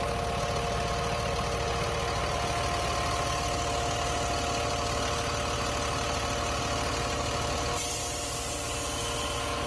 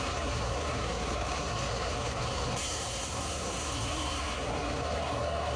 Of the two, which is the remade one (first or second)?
second